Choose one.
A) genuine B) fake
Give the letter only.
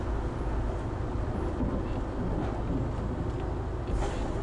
A